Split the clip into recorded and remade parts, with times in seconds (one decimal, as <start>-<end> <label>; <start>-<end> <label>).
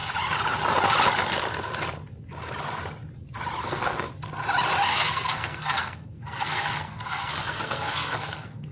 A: 0.0-3.6 recorded; 3.6-4.1 remade; 4.1-4.9 recorded; 4.9-8.7 remade